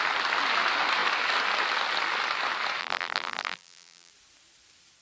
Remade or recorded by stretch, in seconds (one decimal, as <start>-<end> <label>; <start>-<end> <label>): 0.0-2.8 recorded; 2.8-4.1 remade; 4.1-5.0 recorded